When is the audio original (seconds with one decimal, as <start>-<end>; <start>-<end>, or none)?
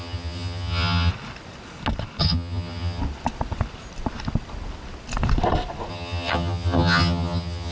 1.1-2.2; 3.0-5.9